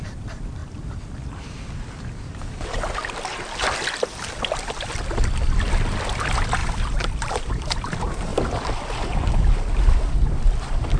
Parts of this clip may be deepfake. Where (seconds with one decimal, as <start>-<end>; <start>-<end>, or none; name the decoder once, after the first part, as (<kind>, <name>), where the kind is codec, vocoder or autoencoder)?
none